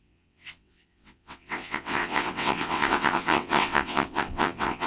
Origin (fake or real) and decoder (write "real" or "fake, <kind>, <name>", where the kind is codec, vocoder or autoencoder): fake, vocoder, WaveNeXt